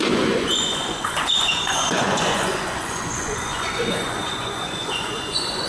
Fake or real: fake